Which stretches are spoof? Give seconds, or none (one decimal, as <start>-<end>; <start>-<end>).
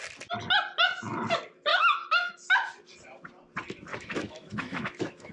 1.7-2.7; 3.9-5.3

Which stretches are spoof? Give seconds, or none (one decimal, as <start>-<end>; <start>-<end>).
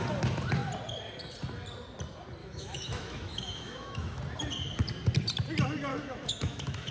2.4-4.2; 5.9-6.9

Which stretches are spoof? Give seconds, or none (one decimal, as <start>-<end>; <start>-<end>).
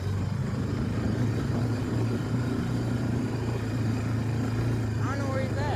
0.4-3.9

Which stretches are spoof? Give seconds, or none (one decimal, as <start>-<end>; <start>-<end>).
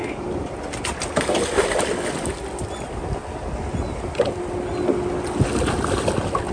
none